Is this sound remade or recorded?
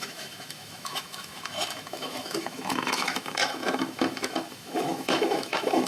remade